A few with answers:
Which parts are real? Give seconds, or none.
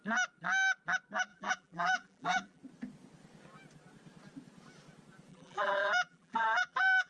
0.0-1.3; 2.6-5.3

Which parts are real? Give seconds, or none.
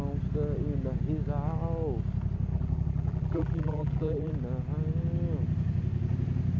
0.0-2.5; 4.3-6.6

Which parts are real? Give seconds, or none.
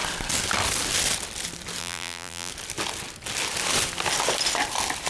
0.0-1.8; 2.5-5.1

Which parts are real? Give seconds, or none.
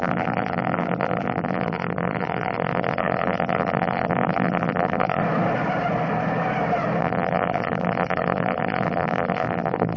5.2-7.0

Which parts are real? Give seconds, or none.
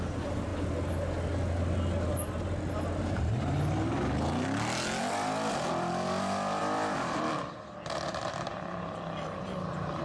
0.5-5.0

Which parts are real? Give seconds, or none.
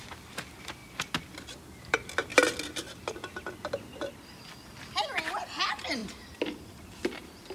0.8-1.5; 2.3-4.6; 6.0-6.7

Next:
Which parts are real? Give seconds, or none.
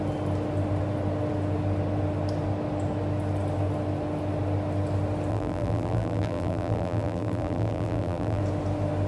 0.0-5.3; 8.4-9.1